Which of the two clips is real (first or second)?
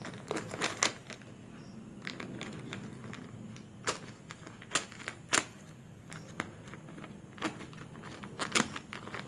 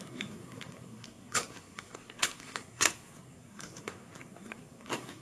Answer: first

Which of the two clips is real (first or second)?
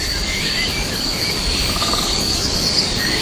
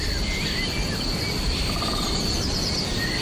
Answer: second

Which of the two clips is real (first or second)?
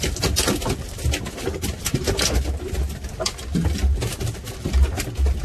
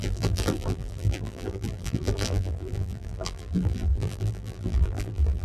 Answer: first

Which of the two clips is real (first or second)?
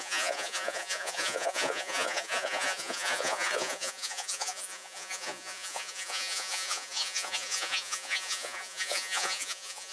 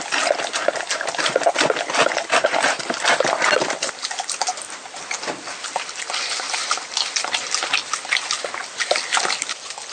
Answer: second